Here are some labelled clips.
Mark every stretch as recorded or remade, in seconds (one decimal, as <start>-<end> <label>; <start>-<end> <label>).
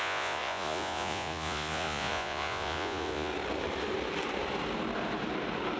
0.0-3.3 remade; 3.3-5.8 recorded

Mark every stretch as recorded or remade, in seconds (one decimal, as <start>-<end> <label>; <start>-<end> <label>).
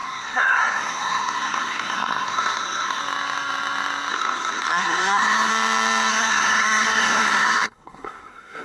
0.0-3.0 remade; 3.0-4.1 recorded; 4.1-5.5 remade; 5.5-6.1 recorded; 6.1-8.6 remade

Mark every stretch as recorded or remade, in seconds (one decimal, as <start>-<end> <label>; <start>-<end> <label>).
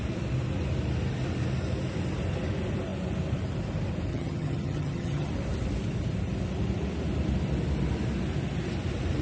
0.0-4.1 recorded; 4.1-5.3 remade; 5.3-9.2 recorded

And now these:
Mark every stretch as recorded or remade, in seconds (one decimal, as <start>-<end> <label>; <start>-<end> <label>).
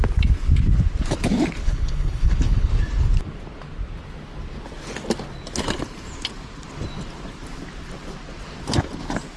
0.0-1.6 recorded; 1.6-2.7 remade; 2.7-9.4 recorded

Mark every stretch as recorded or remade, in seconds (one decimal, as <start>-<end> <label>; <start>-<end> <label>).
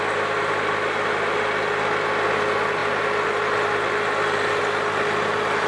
0.0-5.7 recorded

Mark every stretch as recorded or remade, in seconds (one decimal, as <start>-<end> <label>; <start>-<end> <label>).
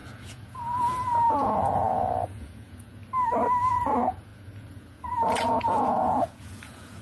0.0-3.0 remade; 3.0-3.7 recorded; 3.7-7.0 remade